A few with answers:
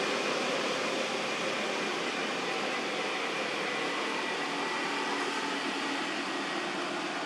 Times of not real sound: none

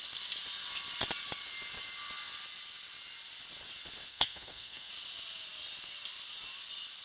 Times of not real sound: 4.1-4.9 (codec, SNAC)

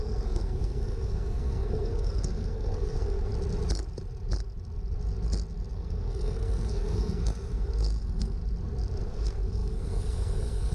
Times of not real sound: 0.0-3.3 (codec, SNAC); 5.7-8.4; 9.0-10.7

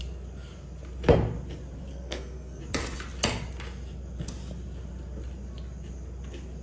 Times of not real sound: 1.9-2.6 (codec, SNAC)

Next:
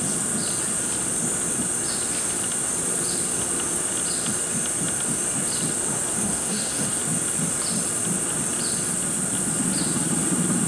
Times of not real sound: 6.2-7.0 (codec, SNAC)

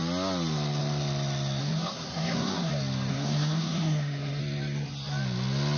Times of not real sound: 1.6-2.7 (codec, SNAC); 3.1-4.4

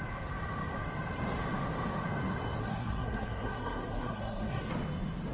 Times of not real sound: 2.6-4.7 (codec, SNAC)